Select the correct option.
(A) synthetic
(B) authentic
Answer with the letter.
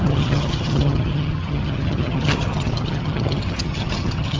A